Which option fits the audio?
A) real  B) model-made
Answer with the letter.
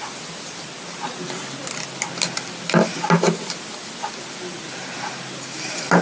A